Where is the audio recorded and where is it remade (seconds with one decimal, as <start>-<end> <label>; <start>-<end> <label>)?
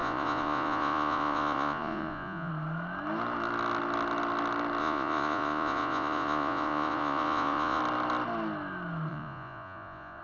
0.0-2.5 remade; 2.5-4.8 recorded; 4.8-7.8 remade; 7.8-9.1 recorded; 9.1-10.2 remade